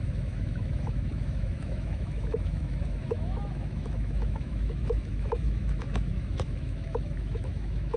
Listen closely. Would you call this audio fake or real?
fake